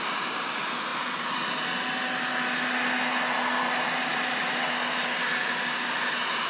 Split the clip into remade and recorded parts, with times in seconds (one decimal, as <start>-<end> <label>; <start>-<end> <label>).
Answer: 0.0-0.9 recorded; 0.9-1.6 remade; 1.6-6.5 recorded